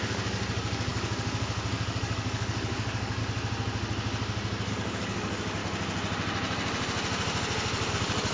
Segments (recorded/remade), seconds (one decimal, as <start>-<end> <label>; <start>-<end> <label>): 0.0-3.2 remade; 3.2-4.7 recorded; 4.7-5.6 remade; 5.6-7.9 recorded; 7.9-8.3 remade